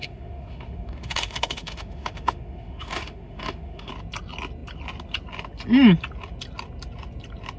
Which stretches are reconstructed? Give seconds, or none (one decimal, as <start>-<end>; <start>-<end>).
0.0-3.9